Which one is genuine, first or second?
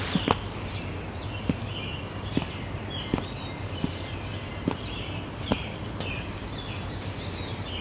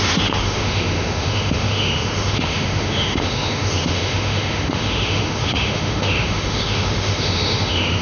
first